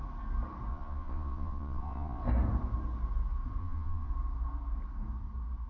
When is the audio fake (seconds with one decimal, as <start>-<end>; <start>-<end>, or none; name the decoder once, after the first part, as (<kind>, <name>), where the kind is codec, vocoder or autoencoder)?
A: 0.7-2.2 (vocoder, Vocos); 3.6-4.1